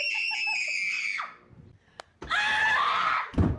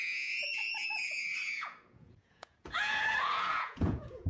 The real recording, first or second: first